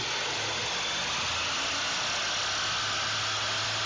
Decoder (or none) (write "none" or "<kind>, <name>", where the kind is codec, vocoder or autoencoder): none